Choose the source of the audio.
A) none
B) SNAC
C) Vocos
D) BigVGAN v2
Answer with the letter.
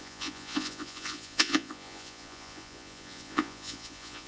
C